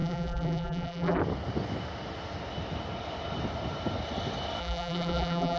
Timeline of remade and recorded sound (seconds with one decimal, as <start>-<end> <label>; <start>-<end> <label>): 0.0-1.2 remade; 1.2-4.6 recorded; 4.6-5.6 remade